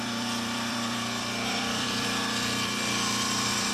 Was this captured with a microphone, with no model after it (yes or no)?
no